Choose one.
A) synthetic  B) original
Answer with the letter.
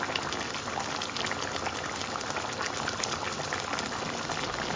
B